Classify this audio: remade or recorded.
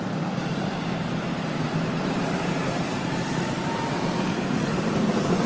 remade